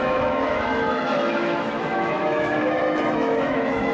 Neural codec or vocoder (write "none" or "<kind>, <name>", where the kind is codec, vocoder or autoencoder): autoencoder, DAC-VAE